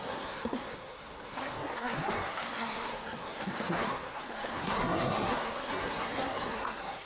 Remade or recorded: remade